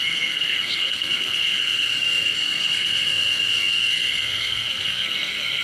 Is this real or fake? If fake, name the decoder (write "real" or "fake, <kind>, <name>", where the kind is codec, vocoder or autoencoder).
fake, codec, SNAC